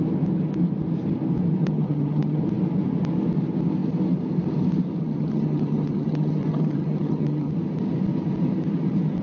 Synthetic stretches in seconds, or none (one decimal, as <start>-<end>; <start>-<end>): 1.6-2.4; 5.0-7.5